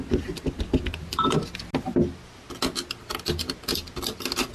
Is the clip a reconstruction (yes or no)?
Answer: no